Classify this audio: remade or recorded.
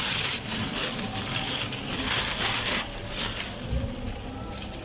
recorded